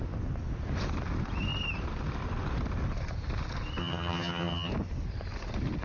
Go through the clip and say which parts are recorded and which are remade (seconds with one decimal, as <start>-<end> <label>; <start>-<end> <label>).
0.0-3.8 recorded; 3.8-4.7 remade; 4.7-5.8 recorded